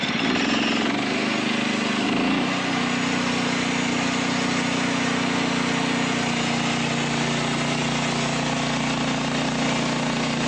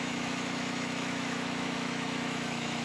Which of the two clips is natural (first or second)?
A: first